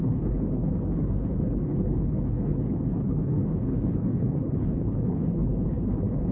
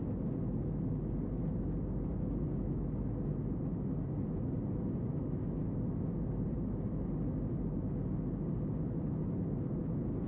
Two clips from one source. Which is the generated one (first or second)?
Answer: first